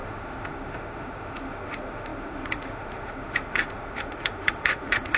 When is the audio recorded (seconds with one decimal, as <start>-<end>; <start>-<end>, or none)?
none